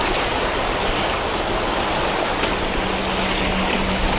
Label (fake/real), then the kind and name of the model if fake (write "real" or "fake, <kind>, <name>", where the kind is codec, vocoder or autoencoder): real